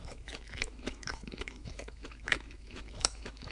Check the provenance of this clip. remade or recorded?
remade